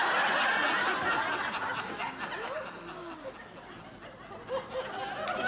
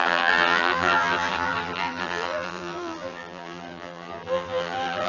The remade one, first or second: second